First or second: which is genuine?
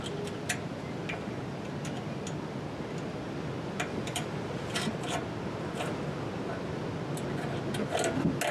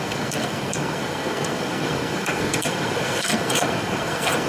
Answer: first